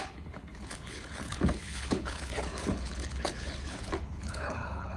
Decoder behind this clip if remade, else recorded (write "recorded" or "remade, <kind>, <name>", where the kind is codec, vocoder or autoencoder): remade, codec, HILCodec